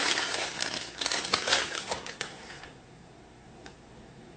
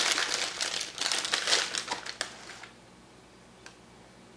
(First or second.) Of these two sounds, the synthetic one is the first